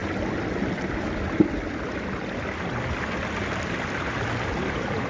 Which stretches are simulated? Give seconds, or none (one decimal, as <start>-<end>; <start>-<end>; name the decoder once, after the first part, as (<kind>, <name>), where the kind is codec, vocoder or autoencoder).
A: none